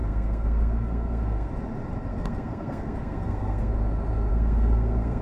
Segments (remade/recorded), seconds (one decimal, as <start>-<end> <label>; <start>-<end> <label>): 0.0-1.5 remade; 1.5-2.1 recorded; 2.1-3.7 remade; 3.7-4.3 recorded; 4.3-5.2 remade